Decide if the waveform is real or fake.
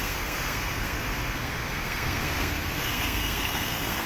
fake